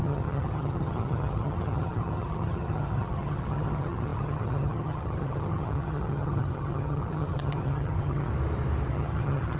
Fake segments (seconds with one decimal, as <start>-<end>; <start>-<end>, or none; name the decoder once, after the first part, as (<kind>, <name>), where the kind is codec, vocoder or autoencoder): 0.0-8.3 (vocoder, HiFi-GAN); 8.9-9.6